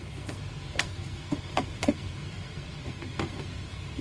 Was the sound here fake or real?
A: fake